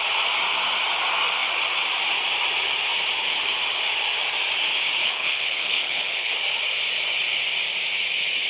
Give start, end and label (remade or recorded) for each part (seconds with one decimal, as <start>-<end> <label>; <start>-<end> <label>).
0.0-5.0 recorded; 5.0-6.3 remade; 6.3-8.5 recorded